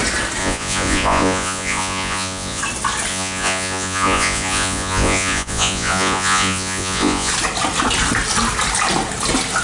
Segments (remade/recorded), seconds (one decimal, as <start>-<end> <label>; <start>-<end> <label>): 0.0-0.4 recorded; 0.4-2.6 remade; 2.6-3.1 recorded; 3.1-7.3 remade; 7.3-9.6 recorded